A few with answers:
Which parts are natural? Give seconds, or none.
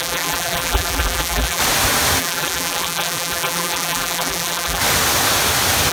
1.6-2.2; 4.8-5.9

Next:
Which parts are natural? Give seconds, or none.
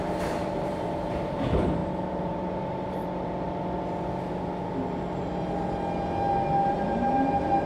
3.0-6.3